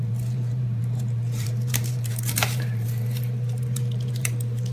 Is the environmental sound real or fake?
fake